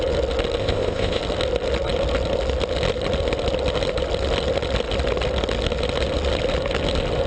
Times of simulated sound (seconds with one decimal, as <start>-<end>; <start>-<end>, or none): 0.6-1.2